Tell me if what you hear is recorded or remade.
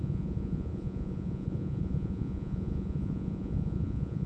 remade